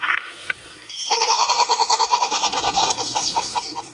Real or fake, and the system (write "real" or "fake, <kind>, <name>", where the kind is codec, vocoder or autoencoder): fake, codec, SNAC